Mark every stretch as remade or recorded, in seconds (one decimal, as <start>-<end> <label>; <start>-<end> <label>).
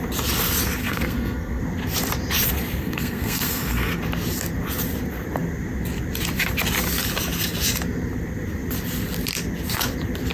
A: 0.0-0.8 recorded; 0.8-1.6 remade; 1.6-2.8 recorded; 2.8-4.0 remade; 4.0-10.3 recorded